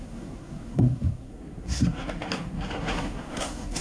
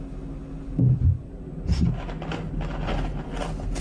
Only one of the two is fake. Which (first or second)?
first